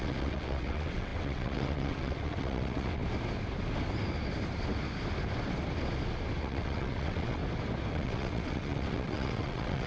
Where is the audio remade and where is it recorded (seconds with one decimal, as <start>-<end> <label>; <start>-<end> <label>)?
0.0-3.0 remade; 3.0-6.4 recorded; 6.4-7.4 remade; 7.4-7.9 recorded; 7.9-9.9 remade